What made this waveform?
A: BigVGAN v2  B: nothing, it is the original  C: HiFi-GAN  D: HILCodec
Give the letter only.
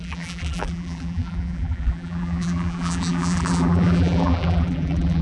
A